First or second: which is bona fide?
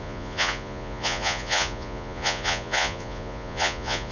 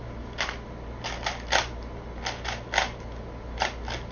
second